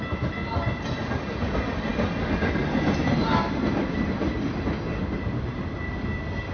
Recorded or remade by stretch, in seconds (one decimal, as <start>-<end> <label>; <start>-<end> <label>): 0.0-6.5 recorded